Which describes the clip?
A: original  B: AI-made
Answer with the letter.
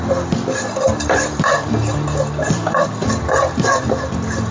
B